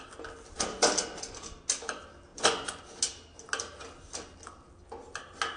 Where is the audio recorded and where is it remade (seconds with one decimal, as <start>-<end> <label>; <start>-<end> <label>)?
0.0-2.3 recorded; 2.3-2.8 remade; 2.8-5.6 recorded